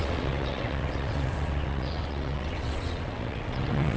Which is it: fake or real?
fake